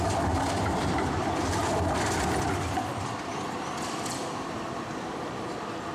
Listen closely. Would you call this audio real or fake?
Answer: fake